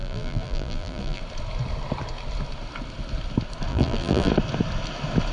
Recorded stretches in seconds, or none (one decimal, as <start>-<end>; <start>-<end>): 1.2-3.7; 4.3-5.3